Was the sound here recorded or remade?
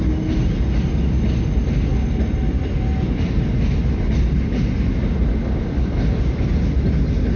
recorded